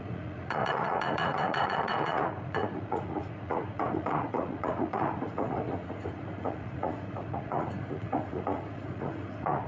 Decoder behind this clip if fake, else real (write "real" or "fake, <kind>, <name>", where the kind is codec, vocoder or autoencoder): fake, vocoder, Vocos